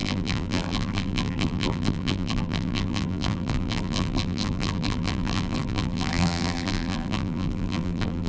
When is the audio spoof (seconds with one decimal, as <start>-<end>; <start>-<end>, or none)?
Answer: 0.0-8.3